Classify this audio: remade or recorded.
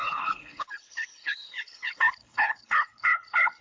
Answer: remade